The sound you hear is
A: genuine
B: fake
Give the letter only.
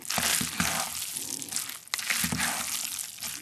A